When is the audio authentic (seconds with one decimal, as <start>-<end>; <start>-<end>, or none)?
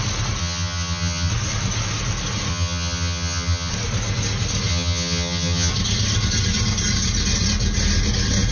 0.0-0.4; 1.3-2.5; 3.7-4.7; 5.7-8.5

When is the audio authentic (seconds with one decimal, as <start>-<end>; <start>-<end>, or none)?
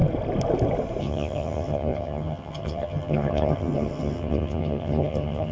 0.0-1.0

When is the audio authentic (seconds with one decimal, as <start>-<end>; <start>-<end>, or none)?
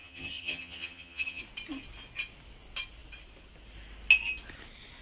1.4-5.0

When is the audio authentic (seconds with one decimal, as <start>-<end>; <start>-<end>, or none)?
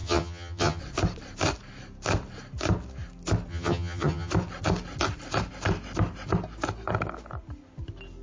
0.8-3.5; 4.3-8.2